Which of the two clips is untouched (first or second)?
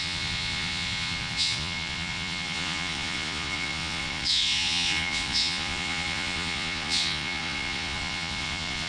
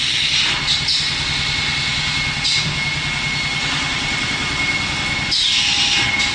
second